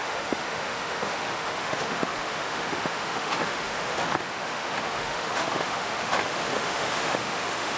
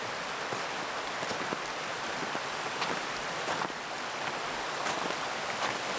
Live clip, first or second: second